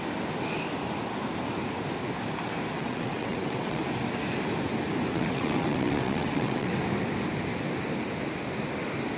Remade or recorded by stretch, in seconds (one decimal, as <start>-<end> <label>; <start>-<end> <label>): 0.0-2.7 recorded; 2.7-3.8 remade; 3.8-5.1 recorded; 5.1-6.8 remade; 6.8-9.2 recorded